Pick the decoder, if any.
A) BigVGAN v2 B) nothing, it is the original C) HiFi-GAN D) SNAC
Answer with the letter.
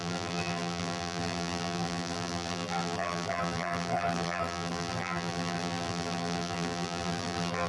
A